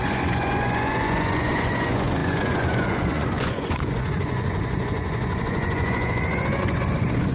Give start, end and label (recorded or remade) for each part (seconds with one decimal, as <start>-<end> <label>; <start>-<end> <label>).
0.0-7.3 remade